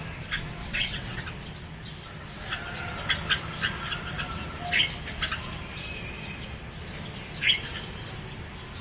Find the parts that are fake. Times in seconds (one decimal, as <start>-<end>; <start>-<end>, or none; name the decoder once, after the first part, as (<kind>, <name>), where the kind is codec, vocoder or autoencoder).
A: 0.6-1.2 (vocoder, WaveNeXt)